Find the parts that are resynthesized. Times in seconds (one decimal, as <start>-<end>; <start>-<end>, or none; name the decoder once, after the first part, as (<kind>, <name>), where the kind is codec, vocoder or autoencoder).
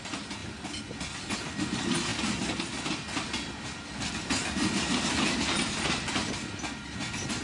none